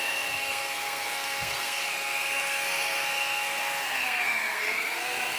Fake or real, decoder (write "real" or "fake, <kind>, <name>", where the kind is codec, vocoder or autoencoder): fake, codec, SNAC